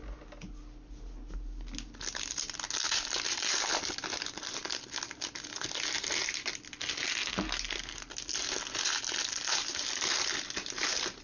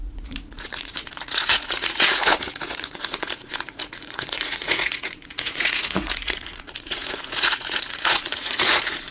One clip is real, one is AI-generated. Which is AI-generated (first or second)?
second